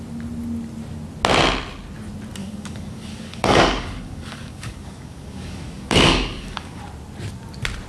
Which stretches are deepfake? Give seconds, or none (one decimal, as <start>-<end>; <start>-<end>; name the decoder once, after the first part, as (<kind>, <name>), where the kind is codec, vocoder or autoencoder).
2.4-6.8 (codec, DAC)